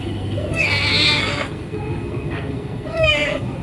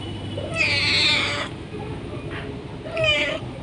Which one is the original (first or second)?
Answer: second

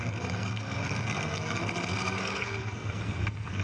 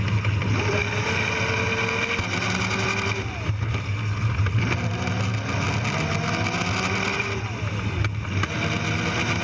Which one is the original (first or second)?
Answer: second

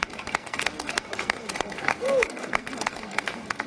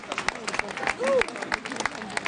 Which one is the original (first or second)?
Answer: second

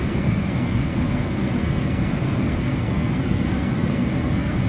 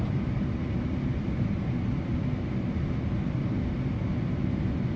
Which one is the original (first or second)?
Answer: second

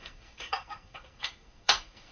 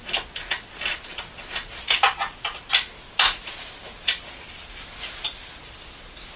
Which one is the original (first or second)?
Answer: second